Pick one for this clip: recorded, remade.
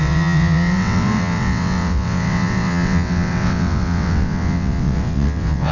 remade